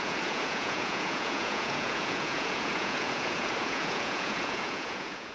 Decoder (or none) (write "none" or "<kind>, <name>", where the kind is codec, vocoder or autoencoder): vocoder, Vocos